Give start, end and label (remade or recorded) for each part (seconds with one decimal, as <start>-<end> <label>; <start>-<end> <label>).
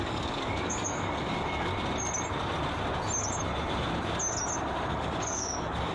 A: 0.0-1.7 remade; 1.7-4.9 recorded; 4.9-5.9 remade